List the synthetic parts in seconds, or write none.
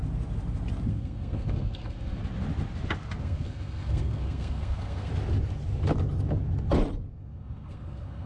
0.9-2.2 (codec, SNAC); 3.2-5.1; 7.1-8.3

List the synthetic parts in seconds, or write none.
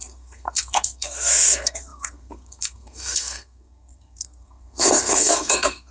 0.0-5.9 (codec, SNAC)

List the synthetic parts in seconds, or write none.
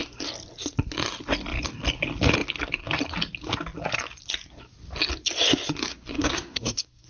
5.9-7.1 (codec, SNAC)